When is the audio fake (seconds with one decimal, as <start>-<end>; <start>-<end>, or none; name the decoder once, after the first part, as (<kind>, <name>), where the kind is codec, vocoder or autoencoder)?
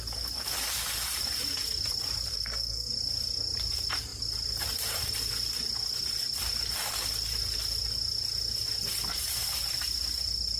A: 2.3-2.9 (codec, SNAC)